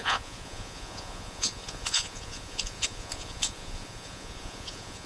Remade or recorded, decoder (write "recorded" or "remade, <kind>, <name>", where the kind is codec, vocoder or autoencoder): remade, vocoder, Vocos